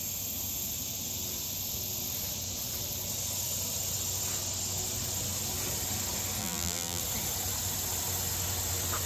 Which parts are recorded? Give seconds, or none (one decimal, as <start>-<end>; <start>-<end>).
0.0-6.4; 7.0-9.1